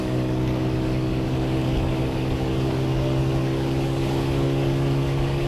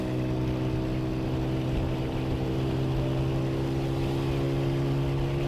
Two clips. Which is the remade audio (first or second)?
first